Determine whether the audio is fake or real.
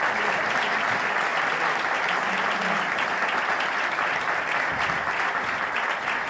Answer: real